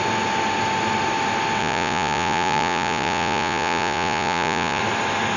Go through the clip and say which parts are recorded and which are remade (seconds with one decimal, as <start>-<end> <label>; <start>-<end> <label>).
0.0-1.6 recorded; 1.6-4.8 remade; 4.8-5.4 recorded

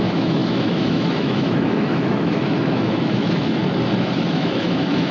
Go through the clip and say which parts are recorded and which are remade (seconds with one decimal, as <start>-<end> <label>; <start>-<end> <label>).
0.0-3.6 remade; 3.6-4.3 recorded; 4.3-5.1 remade

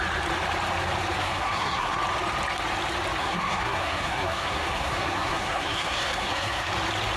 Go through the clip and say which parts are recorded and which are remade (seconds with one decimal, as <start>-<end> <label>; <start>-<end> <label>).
0.0-1.2 recorded; 1.2-2.0 remade; 2.0-3.2 recorded; 3.2-6.7 remade; 6.7-7.2 recorded